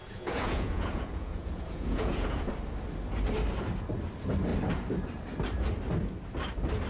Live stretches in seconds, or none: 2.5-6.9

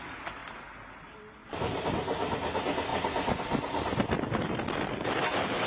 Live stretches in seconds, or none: 0.0-5.7

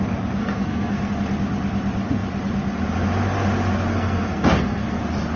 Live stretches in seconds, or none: 0.0-0.4; 1.1-3.9; 5.0-5.4

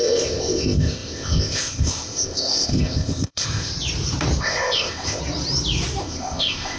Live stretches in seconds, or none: 3.7-4.4; 5.2-6.0